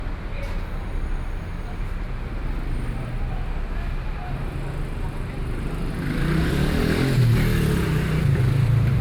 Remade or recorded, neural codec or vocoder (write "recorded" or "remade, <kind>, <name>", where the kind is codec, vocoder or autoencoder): recorded